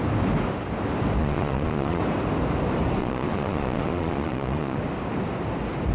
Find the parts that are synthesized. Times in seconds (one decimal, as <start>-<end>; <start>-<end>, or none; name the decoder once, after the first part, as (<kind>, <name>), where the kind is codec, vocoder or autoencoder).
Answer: 1.2-2.0 (vocoder, Vocos); 3.0-4.8

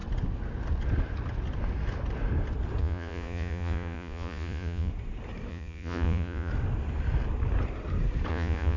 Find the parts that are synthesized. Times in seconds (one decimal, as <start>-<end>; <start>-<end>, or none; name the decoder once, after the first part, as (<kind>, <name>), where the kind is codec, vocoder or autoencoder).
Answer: 2.8-4.9 (vocoder, Vocos); 5.5-6.5; 8.3-8.8

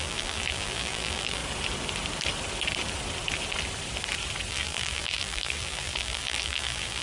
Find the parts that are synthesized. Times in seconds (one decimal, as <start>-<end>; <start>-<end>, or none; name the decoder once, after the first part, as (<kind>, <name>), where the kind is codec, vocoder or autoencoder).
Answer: 0.0-1.4 (vocoder, BigVGAN v2); 4.5-7.0